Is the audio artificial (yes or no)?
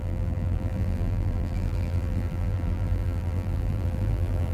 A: yes